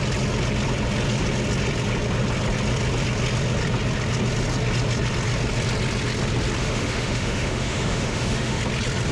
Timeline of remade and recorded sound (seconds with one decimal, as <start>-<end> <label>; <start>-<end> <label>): 0.0-6.6 recorded; 6.6-8.6 remade; 8.6-9.1 recorded